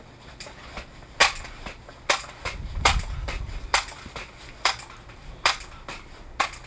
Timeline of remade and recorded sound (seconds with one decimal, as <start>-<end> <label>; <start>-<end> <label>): 0.0-6.7 recorded